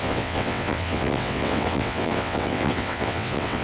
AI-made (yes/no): yes